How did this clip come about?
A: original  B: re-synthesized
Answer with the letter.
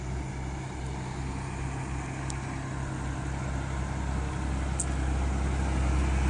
A